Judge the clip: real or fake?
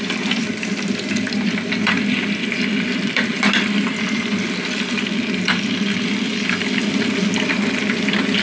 real